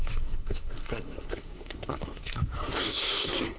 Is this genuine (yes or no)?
no